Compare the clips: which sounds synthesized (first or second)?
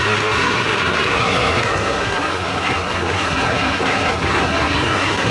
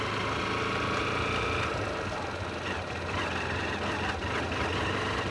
first